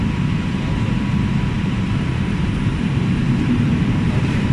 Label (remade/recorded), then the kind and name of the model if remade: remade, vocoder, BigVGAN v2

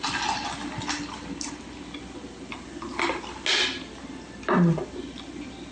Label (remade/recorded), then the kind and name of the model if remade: recorded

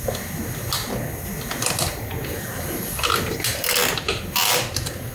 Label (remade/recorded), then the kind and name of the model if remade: recorded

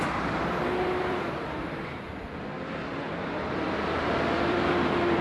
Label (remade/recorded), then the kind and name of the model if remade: remade, vocoder, BigVGAN v2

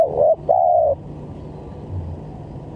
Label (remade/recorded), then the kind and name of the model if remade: recorded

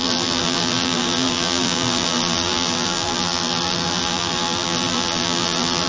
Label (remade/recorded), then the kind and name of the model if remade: remade, vocoder, BigVGAN v2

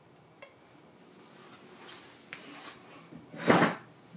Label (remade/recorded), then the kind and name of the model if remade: recorded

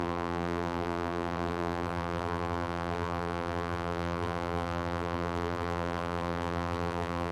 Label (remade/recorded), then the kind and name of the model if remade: remade, vocoder, BigVGAN v2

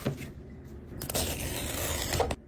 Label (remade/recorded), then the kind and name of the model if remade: recorded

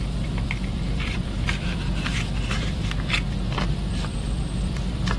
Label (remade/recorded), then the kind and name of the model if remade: remade, vocoder, BigVGAN v2